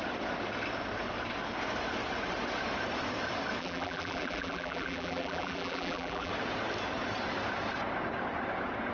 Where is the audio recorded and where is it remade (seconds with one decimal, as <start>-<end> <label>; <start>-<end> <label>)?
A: 0.0-3.6 recorded; 3.6-6.3 remade; 6.3-8.9 recorded